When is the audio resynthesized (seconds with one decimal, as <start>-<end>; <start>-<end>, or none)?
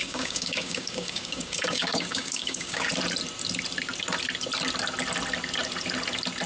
0.0-2.9